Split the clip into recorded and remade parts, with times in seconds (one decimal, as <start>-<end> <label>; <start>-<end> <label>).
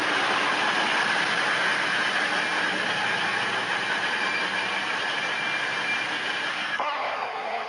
0.0-6.5 recorded; 6.5-7.7 remade